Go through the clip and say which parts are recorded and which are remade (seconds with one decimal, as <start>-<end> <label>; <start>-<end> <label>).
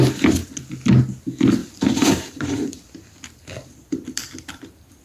0.0-1.6 recorded; 1.6-4.6 remade; 4.6-5.0 recorded